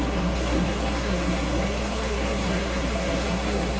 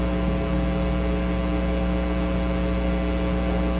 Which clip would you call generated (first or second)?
first